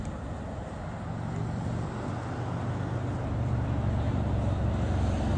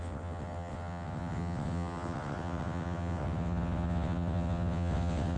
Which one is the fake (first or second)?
second